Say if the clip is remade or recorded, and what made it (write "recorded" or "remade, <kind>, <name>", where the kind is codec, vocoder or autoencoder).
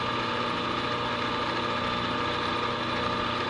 recorded